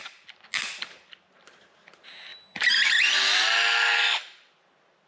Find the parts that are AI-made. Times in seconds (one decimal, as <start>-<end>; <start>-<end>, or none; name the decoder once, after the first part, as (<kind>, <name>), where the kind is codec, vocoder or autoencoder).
none